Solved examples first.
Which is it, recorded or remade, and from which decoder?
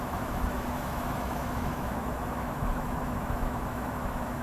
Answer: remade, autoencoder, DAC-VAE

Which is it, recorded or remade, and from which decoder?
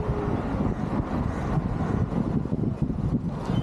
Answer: recorded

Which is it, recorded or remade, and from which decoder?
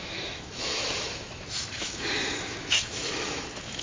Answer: remade, autoencoder, DAC-VAE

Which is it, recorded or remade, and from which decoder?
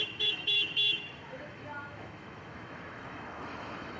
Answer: remade, autoencoder, DAC-VAE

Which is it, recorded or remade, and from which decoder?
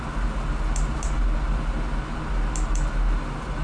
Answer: recorded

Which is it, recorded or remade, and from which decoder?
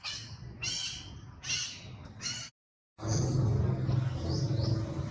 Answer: recorded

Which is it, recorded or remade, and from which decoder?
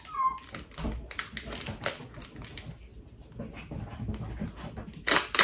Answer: recorded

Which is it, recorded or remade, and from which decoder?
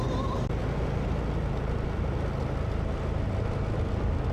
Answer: recorded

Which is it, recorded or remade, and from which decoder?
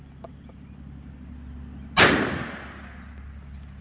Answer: recorded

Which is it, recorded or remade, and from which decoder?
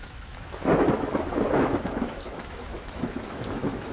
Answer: remade, autoencoder, DAC-VAE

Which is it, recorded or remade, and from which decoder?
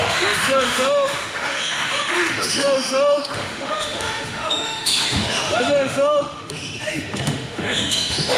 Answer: remade, autoencoder, DAC-VAE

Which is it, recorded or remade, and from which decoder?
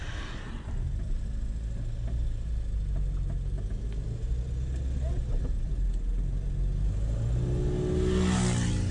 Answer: recorded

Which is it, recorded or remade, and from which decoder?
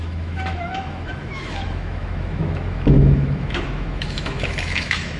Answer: remade, autoencoder, DAC-VAE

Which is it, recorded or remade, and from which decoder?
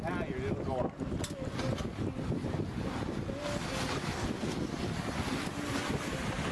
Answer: recorded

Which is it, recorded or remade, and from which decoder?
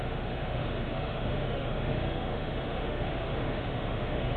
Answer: remade, autoencoder, DAC-VAE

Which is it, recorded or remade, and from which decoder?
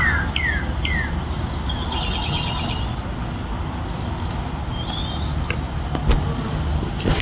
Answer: recorded